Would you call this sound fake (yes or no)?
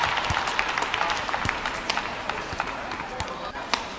no